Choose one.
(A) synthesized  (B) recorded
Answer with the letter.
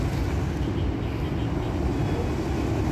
B